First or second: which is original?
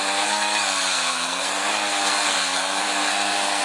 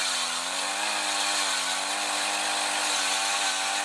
second